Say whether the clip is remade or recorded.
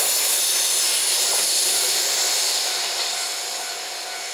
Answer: recorded